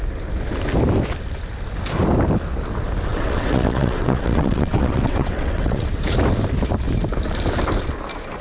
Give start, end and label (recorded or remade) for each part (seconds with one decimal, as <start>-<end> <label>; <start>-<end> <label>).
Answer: 0.0-3.1 recorded; 3.1-6.0 remade; 6.0-8.4 recorded